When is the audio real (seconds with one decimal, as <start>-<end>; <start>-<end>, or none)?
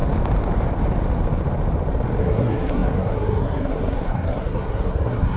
0.0-2.2